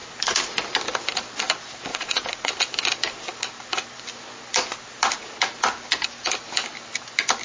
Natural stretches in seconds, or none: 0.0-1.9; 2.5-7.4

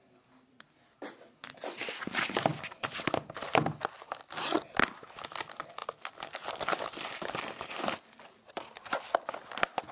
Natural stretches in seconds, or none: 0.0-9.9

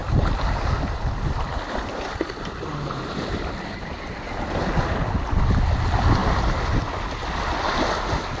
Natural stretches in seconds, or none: 4.2-8.4

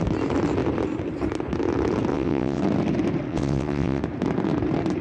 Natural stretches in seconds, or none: 0.0-2.1; 2.6-3.3; 4.0-5.0

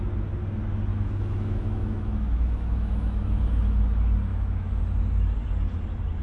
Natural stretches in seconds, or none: 0.0-0.9; 3.4-4.3; 4.8-6.2

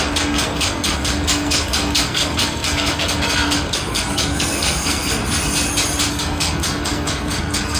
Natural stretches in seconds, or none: 5.2-6.1

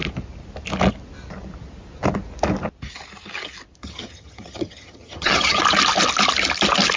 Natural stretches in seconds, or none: 0.0-3.8; 5.6-7.0